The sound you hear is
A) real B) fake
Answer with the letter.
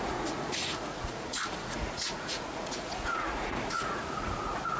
B